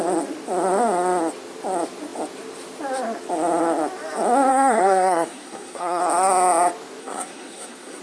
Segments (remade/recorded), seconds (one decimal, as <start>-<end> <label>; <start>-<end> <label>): 0.0-4.5 recorded; 4.5-6.0 remade; 6.0-7.0 recorded; 7.0-8.0 remade